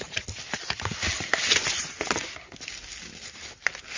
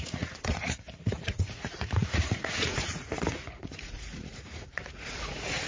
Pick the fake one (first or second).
second